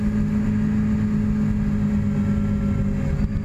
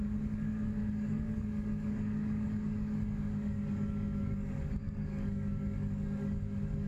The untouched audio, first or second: first